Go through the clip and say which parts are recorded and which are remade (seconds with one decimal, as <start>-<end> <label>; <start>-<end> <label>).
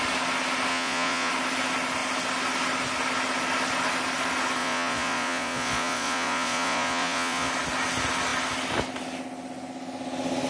0.0-0.7 recorded; 0.7-1.3 remade; 1.3-4.6 recorded; 4.6-7.5 remade; 7.5-10.5 recorded